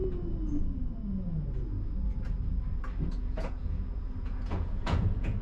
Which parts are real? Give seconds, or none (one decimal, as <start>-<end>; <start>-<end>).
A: 0.0-3.1